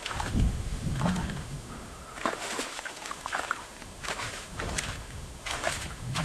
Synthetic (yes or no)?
yes